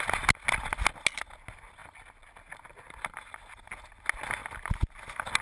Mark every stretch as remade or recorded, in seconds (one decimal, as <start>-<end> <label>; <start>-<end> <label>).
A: 0.0-5.4 recorded